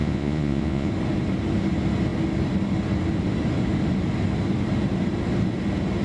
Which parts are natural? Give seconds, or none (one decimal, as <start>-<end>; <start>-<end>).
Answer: 0.9-6.0